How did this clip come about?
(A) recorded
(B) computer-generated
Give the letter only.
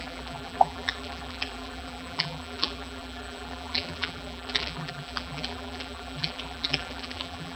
B